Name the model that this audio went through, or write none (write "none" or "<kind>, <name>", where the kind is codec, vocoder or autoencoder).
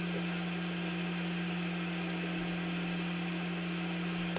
none